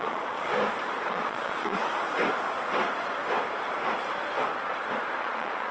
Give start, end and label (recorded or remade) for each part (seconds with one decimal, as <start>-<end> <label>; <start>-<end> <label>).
0.0-0.5 remade; 0.5-1.1 recorded; 1.1-1.8 remade; 1.8-5.2 recorded; 5.2-5.7 remade